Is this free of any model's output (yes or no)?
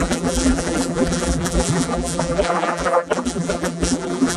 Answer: no